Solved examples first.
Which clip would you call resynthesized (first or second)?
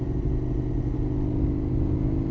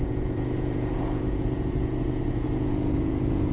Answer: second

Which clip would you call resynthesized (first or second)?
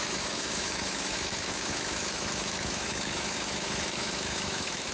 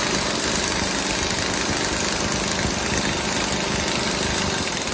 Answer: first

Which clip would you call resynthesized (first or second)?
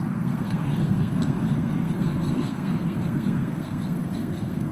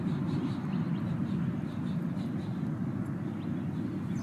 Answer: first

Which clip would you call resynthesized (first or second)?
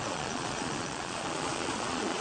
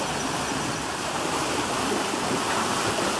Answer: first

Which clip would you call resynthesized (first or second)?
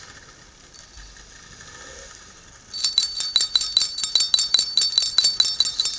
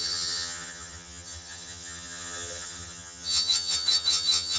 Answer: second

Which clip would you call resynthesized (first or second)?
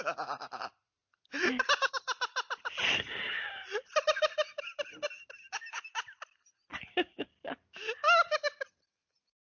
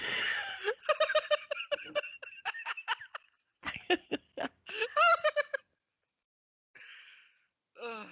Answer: second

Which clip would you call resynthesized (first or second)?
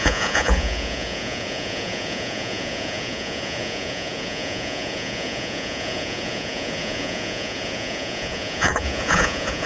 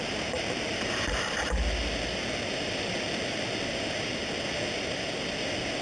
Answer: first